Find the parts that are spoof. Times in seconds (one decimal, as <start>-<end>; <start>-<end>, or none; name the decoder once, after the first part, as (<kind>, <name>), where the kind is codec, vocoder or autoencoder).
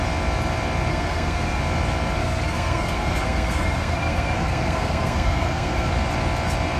0.9-1.6 (codec, SNAC); 2.2-5.9